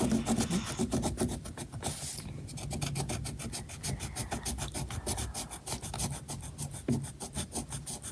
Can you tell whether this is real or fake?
real